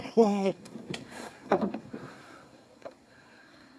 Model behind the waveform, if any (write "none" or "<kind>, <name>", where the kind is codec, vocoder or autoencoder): codec, SNAC